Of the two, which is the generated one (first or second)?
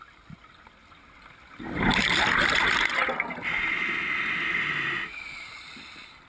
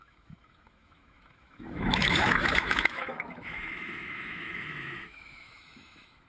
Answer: second